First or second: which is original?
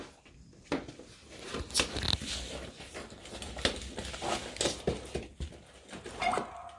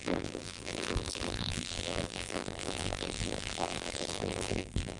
first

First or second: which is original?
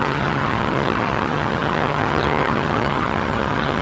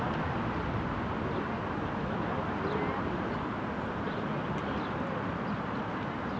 second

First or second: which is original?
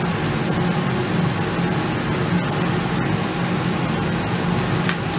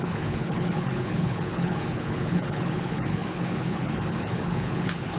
first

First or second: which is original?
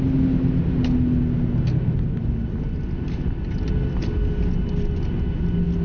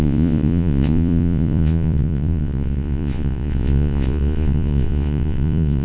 first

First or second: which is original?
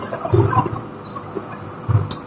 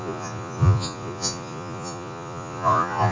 first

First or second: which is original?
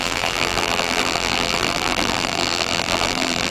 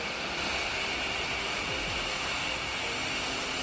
second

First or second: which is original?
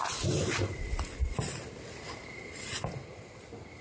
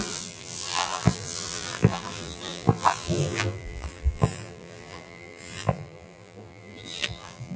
first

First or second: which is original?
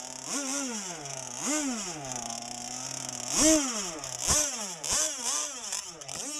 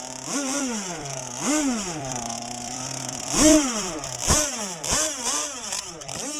first